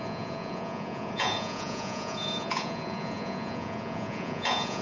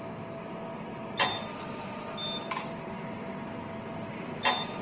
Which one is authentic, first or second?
second